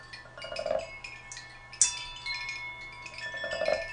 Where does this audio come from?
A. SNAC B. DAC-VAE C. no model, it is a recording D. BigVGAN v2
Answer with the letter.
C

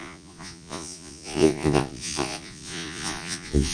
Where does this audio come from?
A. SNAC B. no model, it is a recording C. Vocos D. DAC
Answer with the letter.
C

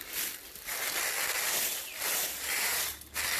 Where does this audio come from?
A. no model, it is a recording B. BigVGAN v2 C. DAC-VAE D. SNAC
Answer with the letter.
A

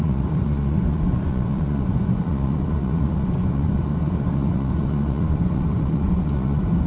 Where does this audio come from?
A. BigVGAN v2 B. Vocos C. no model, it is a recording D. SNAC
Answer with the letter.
B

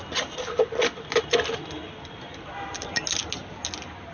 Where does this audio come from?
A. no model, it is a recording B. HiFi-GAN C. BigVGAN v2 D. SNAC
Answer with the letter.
A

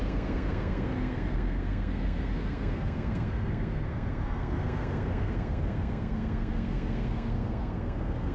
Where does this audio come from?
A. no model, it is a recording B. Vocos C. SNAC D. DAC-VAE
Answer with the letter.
C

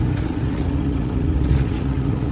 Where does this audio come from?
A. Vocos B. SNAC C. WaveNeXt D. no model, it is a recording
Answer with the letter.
A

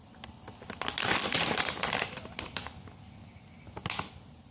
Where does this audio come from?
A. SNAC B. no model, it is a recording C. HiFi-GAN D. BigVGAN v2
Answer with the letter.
B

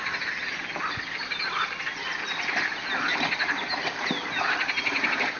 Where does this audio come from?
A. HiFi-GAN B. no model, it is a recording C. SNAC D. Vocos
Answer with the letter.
B